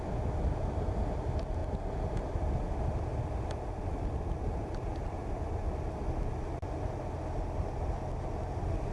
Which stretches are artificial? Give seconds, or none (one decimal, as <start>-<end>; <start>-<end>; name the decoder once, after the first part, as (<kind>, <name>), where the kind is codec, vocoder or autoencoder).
none